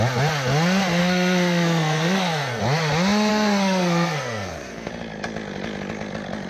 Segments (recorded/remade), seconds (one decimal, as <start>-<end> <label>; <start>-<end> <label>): 0.0-1.0 recorded; 1.0-2.6 remade; 2.6-3.3 recorded; 3.3-4.9 remade; 4.9-6.5 recorded